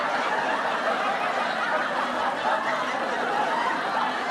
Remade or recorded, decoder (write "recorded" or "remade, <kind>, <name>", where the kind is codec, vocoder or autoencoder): recorded